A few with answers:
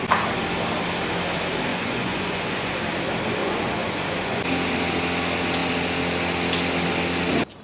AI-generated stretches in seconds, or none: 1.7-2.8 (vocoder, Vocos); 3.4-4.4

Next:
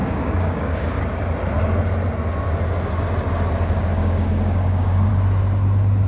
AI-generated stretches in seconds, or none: 0.0-1.0 (codec, DAC); 4.0-5.1

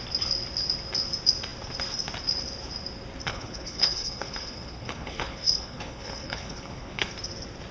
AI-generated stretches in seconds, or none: 3.3-7.1 (codec, HILCodec)

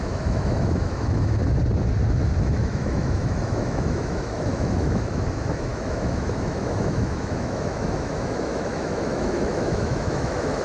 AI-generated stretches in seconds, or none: 0.0-1.4 (autoencoder, DAC-VAE); 2.4-10.6

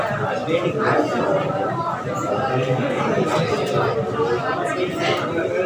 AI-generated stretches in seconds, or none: 2.5-3.0 (codec, SNAC)

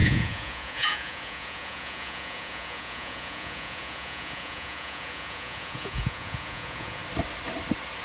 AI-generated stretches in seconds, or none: 0.0-7.0 (vocoder, Vocos)